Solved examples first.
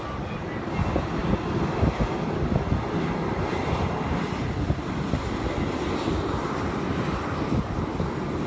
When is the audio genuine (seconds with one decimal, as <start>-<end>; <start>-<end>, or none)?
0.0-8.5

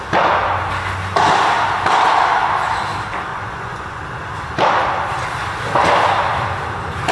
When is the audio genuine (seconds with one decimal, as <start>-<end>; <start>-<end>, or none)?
0.0-3.3; 4.0-7.1

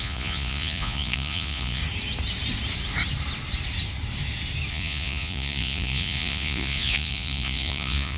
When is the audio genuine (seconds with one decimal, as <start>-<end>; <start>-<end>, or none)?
1.8-4.7

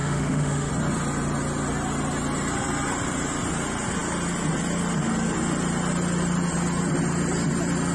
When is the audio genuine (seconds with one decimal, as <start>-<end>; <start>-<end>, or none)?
0.7-7.9

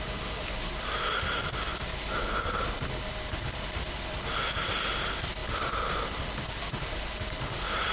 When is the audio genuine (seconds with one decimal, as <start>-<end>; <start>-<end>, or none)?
1.9-3.4